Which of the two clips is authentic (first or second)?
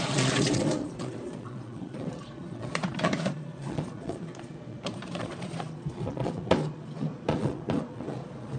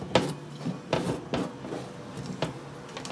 second